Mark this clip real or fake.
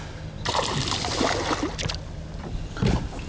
real